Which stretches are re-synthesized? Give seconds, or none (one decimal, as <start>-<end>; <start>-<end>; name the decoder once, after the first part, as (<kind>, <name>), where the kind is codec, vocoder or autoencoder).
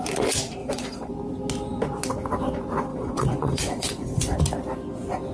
0.6-1.1 (vocoder, WaveNeXt); 2.9-4.4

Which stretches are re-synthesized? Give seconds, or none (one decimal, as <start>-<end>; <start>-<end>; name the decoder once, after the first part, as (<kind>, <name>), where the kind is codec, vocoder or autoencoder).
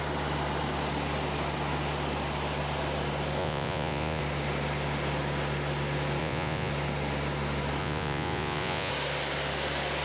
3.4-4.2 (vocoder, Vocos); 6.2-6.7; 7.8-8.9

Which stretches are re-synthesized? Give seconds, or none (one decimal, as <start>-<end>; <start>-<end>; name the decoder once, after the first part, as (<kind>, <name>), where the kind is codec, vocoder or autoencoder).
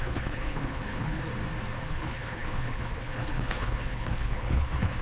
0.0-1.2 (codec, HILCodec); 1.9-5.0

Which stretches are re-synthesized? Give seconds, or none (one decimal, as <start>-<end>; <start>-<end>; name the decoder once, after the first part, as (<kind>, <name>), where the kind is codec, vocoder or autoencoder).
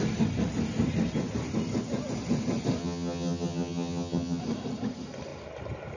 2.8-4.4 (vocoder, HiFi-GAN)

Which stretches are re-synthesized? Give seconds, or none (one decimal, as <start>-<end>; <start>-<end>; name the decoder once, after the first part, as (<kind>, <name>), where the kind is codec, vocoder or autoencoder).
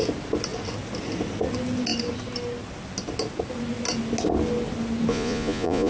5.1-5.9 (vocoder, Vocos)